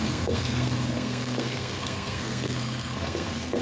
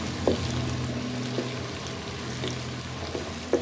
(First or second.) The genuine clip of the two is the second